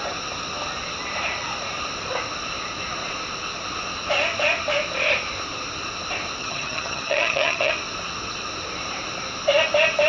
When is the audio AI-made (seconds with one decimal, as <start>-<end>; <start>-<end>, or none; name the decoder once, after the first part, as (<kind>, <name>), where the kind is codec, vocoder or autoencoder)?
6.4-7.7 (vocoder, HiFi-GAN)